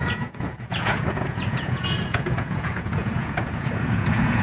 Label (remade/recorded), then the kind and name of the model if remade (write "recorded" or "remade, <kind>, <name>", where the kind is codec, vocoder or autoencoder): remade, vocoder, Vocos